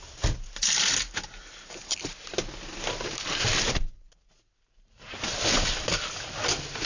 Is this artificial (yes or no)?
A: no